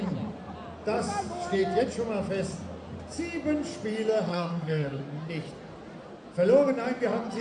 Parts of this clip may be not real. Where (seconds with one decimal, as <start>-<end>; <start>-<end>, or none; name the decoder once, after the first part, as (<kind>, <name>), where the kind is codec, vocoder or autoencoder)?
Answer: 4.3-5.0 (codec, SNAC)